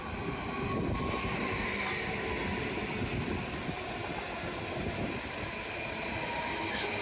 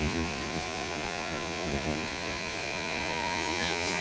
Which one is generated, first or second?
second